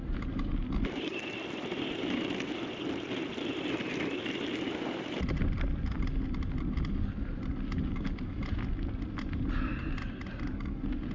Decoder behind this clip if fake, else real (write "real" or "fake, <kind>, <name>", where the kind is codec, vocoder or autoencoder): real